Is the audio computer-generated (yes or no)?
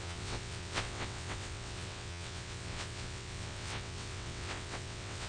yes